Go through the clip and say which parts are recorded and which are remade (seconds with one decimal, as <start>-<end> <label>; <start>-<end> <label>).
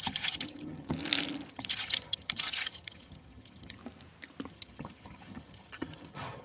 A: 0.0-0.9 remade; 0.9-1.5 recorded; 1.5-3.8 remade; 3.8-4.5 recorded; 4.5-6.4 remade